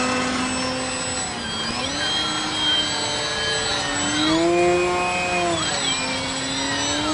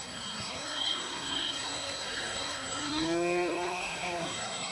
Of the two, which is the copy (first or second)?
second